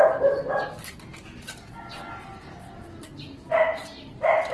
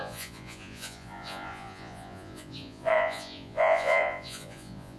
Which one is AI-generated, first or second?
second